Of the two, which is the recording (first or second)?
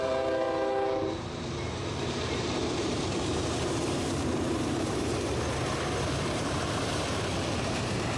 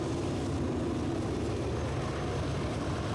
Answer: second